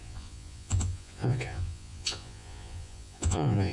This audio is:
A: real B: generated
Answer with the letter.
B